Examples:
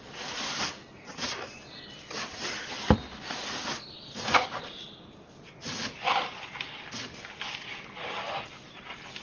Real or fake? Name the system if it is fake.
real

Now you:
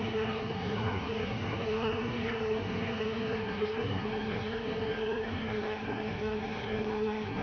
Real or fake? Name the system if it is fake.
fake, codec, SNAC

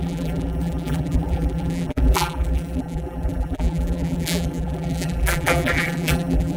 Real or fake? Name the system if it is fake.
fake, vocoder, BigVGAN v2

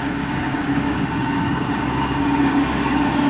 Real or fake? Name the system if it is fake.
fake, codec, DAC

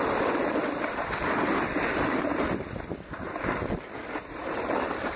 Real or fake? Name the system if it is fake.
fake, vocoder, BigVGAN v2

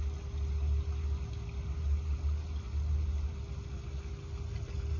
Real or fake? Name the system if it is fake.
real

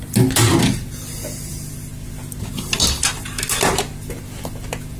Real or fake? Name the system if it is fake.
real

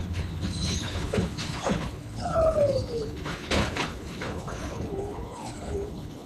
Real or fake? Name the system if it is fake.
fake, codec, HILCodec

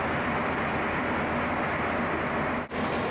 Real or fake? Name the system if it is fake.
real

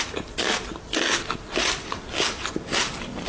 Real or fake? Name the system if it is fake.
real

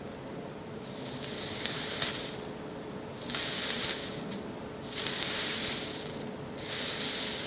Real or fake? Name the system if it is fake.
real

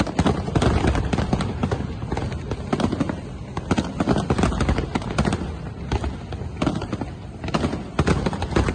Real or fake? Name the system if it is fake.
real